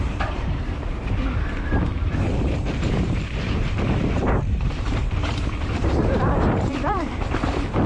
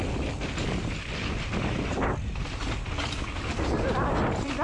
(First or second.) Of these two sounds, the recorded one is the second